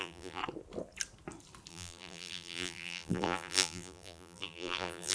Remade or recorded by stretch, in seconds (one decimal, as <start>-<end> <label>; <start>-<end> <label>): 0.0-0.4 remade; 0.4-1.7 recorded; 1.7-5.1 remade